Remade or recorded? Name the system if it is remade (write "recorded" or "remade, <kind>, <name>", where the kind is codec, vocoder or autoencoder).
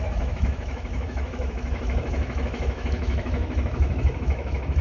remade, autoencoder, DAC-VAE